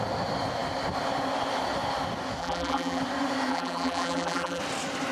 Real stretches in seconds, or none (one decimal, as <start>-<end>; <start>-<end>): 0.0-2.4; 3.0-3.5; 4.6-5.1